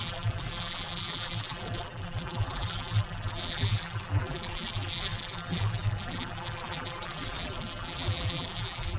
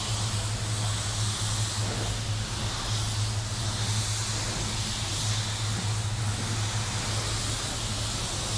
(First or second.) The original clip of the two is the second